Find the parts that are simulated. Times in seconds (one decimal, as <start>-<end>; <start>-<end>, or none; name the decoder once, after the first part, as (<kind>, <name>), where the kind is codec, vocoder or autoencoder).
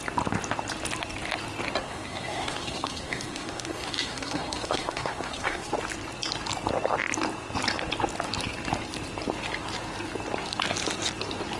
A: 1.8-5.7 (codec, SNAC)